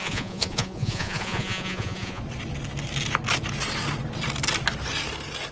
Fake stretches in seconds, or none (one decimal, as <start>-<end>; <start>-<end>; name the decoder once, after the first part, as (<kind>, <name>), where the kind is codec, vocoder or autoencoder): 0.0-2.2 (vocoder, Vocos)